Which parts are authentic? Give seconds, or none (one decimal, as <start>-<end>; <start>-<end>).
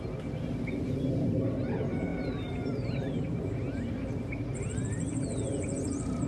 0.0-6.3